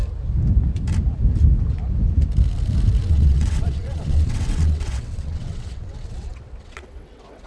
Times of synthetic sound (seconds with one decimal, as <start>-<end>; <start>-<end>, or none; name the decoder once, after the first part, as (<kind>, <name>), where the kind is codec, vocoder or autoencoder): 3.1-7.5 (vocoder, WaveNeXt)